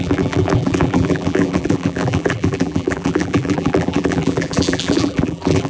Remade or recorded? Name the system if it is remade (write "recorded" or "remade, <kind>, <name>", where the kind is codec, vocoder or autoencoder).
remade, vocoder, BigVGAN v2